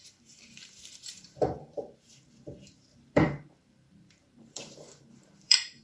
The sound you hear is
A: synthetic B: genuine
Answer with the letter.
A